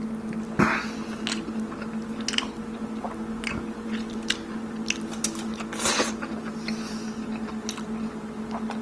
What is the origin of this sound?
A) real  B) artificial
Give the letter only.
A